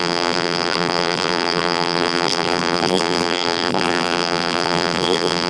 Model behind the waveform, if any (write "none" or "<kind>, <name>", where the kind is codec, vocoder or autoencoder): vocoder, BigVGAN v2